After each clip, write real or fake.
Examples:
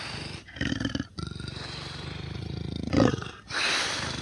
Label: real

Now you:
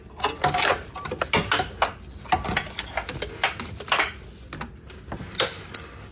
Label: real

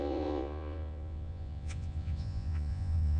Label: fake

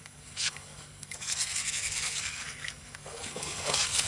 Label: fake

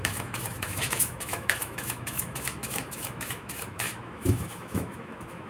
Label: fake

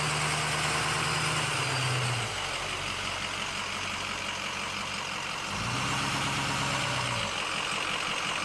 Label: real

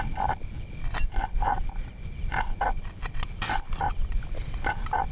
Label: real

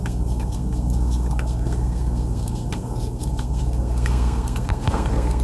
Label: fake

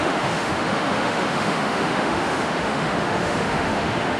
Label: fake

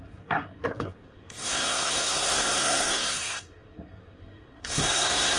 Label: fake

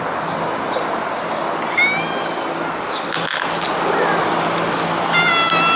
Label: real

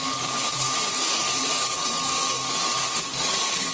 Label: fake